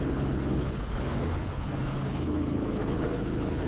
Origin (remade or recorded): remade